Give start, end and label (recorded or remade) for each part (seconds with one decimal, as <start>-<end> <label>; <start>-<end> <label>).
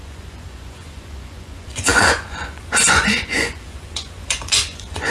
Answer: 0.0-5.1 remade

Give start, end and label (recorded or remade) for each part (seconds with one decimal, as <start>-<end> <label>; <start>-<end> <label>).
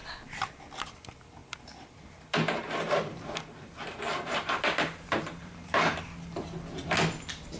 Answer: 0.0-0.6 remade; 0.6-1.4 recorded; 1.4-6.0 remade; 6.0-7.6 recorded